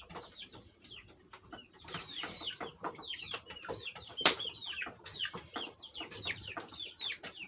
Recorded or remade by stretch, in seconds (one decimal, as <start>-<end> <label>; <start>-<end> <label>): 0.0-7.5 remade